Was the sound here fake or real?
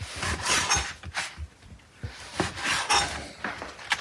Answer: real